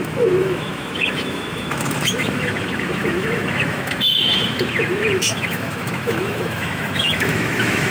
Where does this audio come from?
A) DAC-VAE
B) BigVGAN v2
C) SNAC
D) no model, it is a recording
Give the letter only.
A